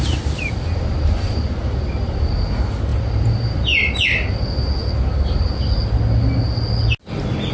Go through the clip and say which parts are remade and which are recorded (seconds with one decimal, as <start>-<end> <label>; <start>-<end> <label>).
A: 0.0-2.9 recorded; 2.9-3.9 remade; 3.9-7.5 recorded

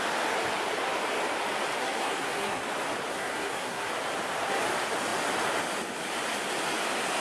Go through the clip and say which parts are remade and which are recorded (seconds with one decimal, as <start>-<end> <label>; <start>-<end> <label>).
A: 0.0-1.8 recorded; 1.8-2.6 remade; 2.6-3.1 recorded; 3.1-3.9 remade; 3.9-7.2 recorded